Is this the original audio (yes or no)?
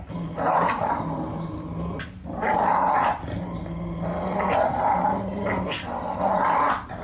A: yes